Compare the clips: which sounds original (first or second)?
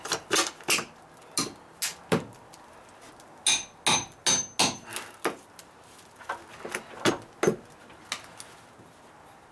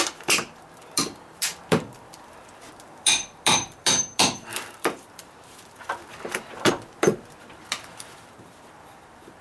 first